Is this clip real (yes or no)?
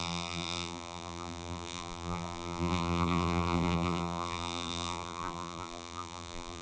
no